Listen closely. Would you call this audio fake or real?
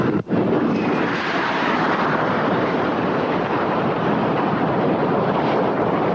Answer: fake